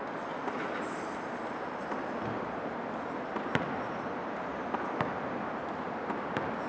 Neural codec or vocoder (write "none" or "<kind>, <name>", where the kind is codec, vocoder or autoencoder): none